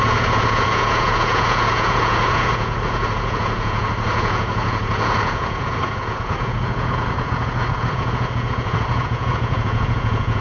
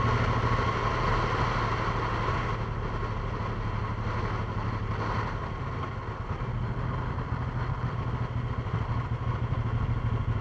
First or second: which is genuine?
second